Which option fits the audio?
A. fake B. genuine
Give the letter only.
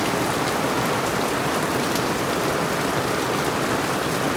B